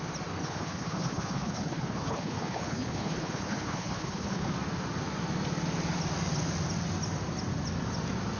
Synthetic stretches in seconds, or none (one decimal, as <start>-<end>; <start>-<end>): 0.4-4.5